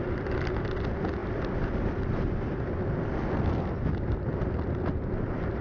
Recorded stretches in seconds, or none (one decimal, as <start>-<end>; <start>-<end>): 0.0-5.6